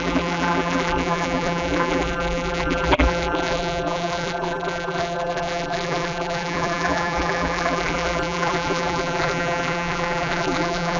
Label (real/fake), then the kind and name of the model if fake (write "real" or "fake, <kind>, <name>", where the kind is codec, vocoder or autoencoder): fake, vocoder, BigVGAN v2